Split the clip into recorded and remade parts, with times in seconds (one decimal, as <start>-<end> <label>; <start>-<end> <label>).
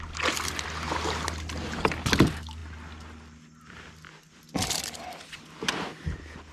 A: 0.0-6.5 recorded